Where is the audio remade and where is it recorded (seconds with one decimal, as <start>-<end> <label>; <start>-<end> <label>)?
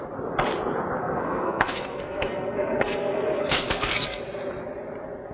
0.0-1.0 recorded; 1.0-4.2 remade; 4.2-5.3 recorded